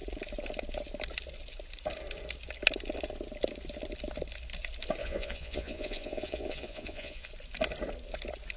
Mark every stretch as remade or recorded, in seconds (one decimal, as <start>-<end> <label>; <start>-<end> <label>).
0.0-5.0 recorded; 5.0-7.3 remade; 7.3-8.6 recorded